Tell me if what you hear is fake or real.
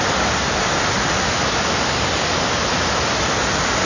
real